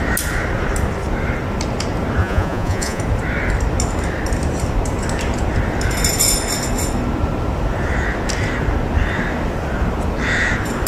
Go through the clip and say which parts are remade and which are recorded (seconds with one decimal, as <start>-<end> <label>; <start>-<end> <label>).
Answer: 0.0-2.2 recorded; 2.2-3.0 remade; 3.0-10.9 recorded